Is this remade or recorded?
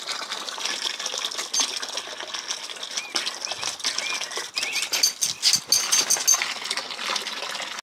recorded